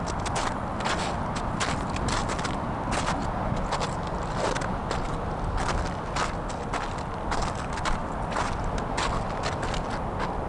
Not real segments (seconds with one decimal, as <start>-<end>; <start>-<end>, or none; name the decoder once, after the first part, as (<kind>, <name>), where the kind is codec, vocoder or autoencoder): none